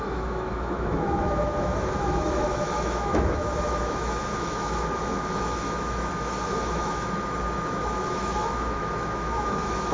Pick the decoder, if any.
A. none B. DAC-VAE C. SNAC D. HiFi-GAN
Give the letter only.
B